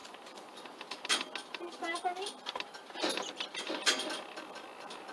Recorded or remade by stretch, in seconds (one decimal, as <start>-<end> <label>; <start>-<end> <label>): 0.0-5.1 recorded